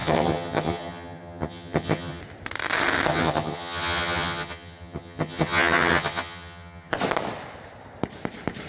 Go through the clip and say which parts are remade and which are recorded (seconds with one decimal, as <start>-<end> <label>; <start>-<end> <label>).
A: 0.0-2.2 remade; 2.2-3.1 recorded; 3.1-6.9 remade; 6.9-8.7 recorded

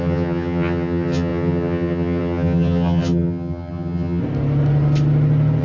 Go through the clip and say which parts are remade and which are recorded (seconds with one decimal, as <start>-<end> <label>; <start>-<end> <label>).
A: 0.0-4.2 remade; 4.2-5.6 recorded

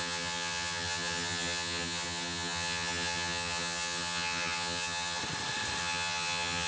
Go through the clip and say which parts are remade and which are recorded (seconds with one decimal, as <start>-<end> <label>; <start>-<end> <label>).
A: 0.0-5.2 remade; 5.2-5.8 recorded; 5.8-6.7 remade

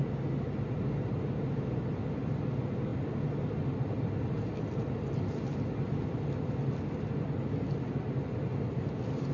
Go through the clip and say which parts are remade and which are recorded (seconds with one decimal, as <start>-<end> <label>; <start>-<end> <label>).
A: 0.0-9.3 recorded

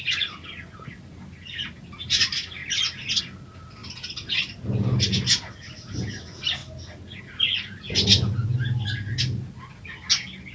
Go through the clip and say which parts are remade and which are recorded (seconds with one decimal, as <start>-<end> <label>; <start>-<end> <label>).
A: 0.0-10.5 recorded